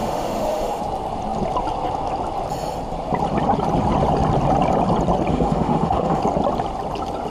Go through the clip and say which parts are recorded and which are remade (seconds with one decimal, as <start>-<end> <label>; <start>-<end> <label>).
0.0-0.8 remade; 0.8-5.3 recorded; 5.3-6.2 remade; 6.2-7.3 recorded